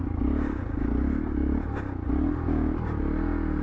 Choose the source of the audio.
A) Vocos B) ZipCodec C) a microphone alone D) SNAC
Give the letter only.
C